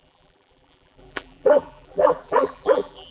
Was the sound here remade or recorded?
remade